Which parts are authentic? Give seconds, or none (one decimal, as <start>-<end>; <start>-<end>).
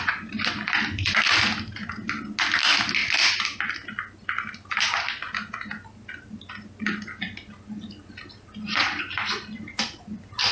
0.0-10.5